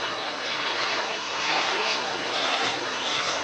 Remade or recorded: remade